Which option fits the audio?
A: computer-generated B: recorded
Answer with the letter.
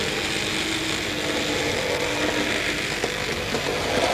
B